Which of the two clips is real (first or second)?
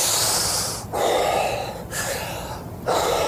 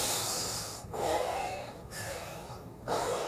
first